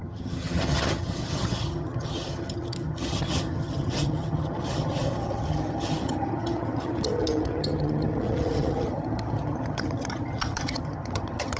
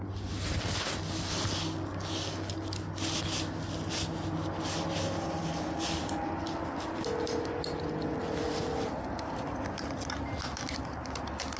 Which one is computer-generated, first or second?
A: first